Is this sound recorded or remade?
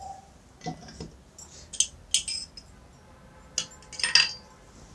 recorded